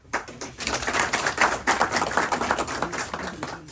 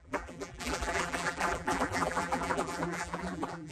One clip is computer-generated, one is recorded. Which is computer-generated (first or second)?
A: second